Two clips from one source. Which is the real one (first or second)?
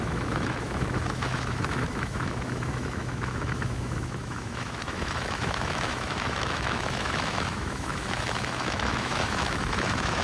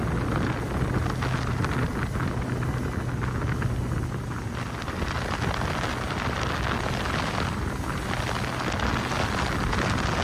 second